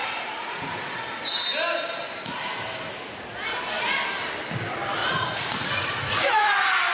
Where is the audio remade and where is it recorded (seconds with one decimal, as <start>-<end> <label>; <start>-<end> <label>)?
0.0-1.0 remade; 1.0-5.0 recorded; 5.0-6.5 remade; 6.5-6.9 recorded